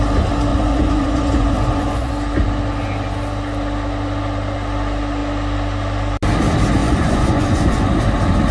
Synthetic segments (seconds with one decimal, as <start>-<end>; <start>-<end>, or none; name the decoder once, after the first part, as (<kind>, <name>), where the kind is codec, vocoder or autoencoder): 0.5-2.1 (vocoder, Vocos); 6.8-7.9

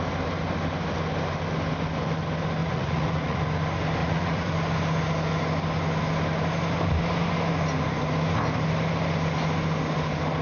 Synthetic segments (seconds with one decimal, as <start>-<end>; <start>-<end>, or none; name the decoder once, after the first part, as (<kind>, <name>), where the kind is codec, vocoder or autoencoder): 2.6-3.4 (vocoder, Vocos); 4.0-4.5